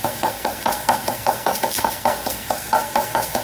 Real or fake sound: fake